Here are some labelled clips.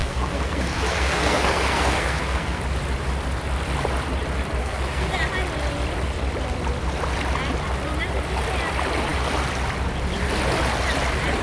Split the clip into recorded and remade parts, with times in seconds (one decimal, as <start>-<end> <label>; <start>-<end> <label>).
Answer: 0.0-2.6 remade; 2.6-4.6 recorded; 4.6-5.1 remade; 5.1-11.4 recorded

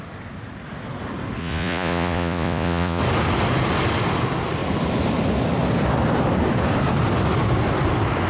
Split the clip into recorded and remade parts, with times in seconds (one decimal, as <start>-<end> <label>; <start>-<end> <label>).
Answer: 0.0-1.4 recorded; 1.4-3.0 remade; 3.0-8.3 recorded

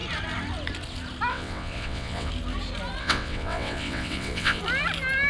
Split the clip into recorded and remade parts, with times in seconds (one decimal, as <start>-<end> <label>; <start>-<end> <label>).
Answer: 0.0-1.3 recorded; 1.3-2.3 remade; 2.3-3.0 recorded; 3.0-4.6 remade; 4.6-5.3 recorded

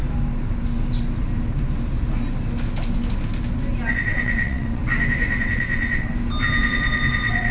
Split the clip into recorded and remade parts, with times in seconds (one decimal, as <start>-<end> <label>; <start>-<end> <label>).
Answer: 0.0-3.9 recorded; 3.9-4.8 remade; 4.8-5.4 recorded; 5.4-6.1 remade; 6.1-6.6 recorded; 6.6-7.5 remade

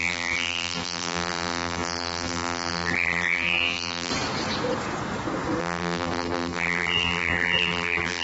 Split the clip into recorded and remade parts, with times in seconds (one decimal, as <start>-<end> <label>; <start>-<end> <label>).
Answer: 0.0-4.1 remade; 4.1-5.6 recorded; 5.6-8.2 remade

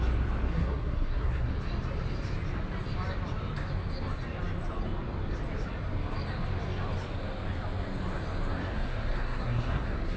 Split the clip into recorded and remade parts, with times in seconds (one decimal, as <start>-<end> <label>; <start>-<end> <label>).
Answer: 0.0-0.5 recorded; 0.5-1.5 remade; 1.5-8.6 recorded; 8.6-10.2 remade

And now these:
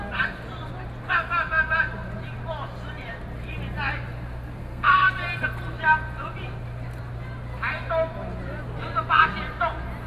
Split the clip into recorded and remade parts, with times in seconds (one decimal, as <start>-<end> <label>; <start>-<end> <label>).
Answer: 0.0-4.6 recorded; 4.6-5.1 remade; 5.1-10.1 recorded